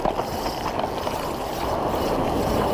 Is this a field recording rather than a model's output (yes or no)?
yes